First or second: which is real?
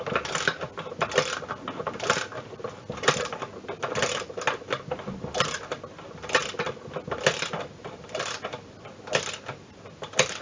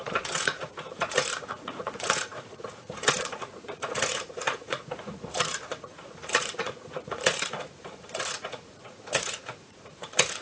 first